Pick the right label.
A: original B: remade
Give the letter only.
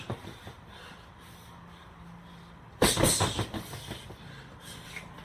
A